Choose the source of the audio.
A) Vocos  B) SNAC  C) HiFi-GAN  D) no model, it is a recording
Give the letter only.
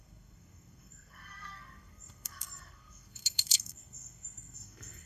B